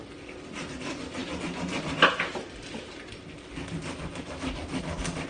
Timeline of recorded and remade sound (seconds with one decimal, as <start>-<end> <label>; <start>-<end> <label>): 0.0-5.3 recorded